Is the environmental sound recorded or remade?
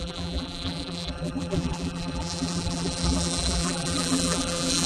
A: remade